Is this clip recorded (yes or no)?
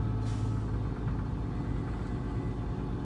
yes